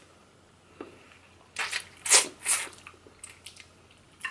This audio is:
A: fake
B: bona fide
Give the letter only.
B